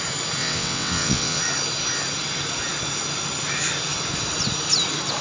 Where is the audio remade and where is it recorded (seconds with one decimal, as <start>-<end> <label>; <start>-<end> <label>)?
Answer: 0.0-0.4 recorded; 0.4-1.4 remade; 1.4-5.2 recorded